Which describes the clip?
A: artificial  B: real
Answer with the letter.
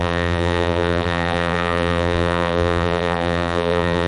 A